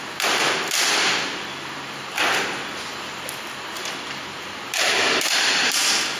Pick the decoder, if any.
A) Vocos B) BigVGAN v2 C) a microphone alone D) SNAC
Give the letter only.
C